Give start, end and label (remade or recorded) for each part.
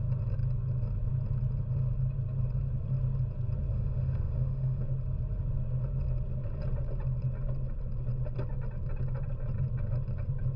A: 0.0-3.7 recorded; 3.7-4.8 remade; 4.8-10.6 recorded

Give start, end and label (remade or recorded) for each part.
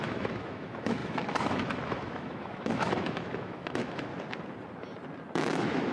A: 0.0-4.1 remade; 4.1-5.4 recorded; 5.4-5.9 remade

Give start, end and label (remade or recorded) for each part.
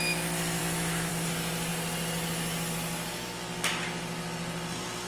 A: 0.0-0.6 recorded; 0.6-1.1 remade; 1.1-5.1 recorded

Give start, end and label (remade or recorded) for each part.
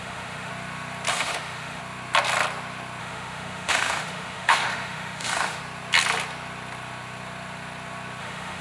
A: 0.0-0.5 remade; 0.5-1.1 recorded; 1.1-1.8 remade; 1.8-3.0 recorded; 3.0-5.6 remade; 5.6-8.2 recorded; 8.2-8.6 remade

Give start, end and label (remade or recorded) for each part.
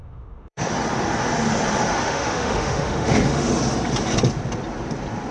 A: 0.0-0.7 remade; 0.7-2.0 recorded; 2.0-3.5 remade; 3.5-5.3 recorded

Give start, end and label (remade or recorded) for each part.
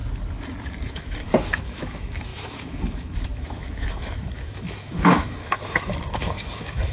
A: 0.0-0.9 recorded; 0.9-6.9 remade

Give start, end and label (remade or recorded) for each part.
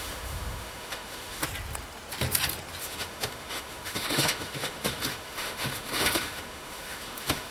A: 0.0-1.4 remade; 1.4-2.8 recorded; 2.8-7.5 remade